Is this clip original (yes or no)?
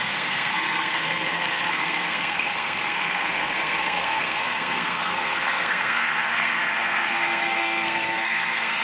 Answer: no